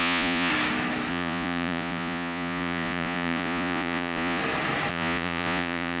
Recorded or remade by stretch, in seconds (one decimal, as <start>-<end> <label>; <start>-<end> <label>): 0.0-0.5 remade; 0.5-1.1 recorded; 1.1-4.4 remade; 4.4-4.9 recorded; 4.9-6.0 remade